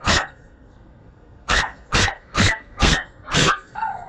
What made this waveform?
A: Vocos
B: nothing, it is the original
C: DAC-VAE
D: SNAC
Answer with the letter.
D